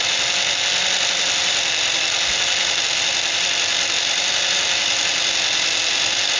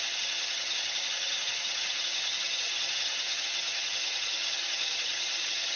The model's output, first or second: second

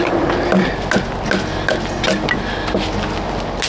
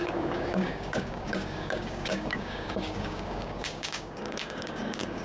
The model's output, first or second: second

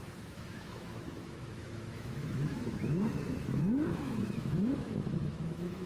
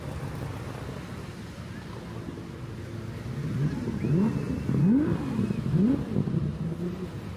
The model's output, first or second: first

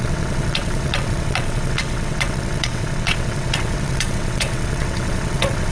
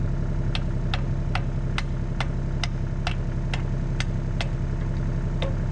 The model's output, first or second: first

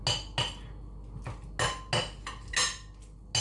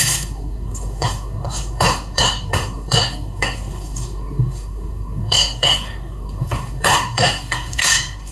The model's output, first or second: second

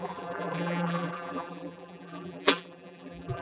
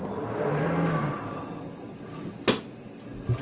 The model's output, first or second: first